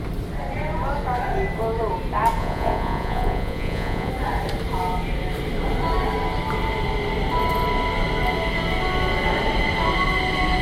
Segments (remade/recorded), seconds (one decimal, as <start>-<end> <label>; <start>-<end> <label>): 0.0-2.4 recorded; 2.4-4.1 remade; 4.1-10.6 recorded